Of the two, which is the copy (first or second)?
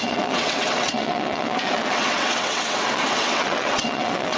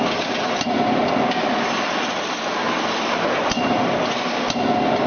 first